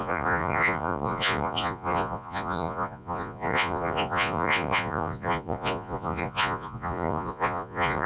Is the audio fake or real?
fake